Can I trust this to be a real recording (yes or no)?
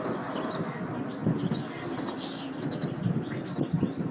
yes